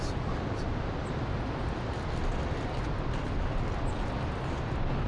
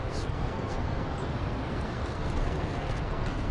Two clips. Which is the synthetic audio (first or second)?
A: second